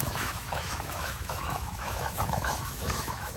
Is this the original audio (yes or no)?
no